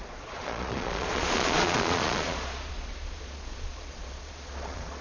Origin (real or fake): fake